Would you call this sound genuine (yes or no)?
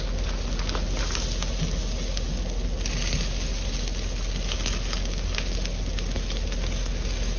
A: yes